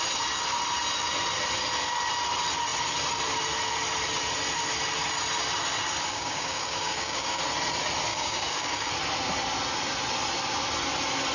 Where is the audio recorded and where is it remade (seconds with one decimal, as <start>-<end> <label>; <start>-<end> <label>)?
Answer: 0.0-6.1 recorded; 6.1-7.4 remade; 7.4-8.1 recorded; 8.1-8.9 remade; 8.9-11.3 recorded